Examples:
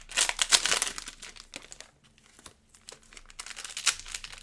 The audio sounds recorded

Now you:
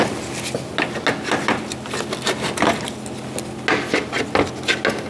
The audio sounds recorded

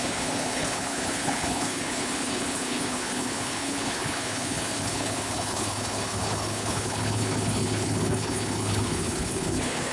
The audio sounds remade